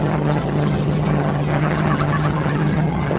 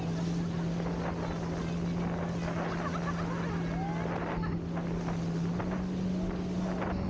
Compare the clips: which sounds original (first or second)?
second